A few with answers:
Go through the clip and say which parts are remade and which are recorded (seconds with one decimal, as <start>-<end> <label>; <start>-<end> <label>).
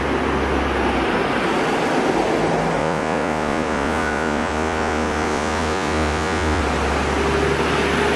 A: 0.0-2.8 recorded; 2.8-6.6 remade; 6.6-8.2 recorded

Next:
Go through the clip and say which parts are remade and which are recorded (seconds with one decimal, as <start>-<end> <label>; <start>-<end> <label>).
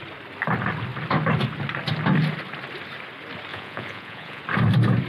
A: 0.0-3.5 recorded; 3.5-4.4 remade; 4.4-5.1 recorded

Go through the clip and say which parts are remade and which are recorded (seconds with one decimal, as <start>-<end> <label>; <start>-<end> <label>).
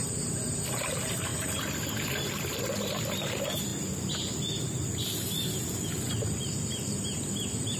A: 0.0-0.7 recorded; 0.7-3.7 remade; 3.7-6.1 recorded; 6.1-7.8 remade